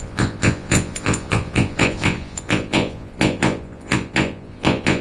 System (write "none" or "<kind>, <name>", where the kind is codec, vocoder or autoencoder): vocoder, Vocos